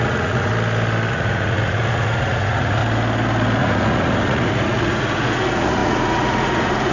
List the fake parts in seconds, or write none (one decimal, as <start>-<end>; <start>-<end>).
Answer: 0.0-0.5; 1.1-2.8; 3.6-6.9